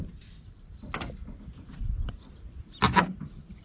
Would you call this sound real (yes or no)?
yes